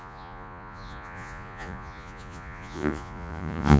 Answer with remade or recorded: remade